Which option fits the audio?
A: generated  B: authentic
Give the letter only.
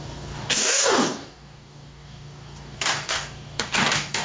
A